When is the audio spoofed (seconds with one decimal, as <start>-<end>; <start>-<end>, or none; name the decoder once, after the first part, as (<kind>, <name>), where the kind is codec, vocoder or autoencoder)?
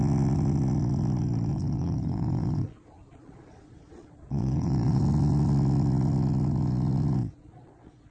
1.5-5.0 (vocoder, Vocos); 7.2-8.1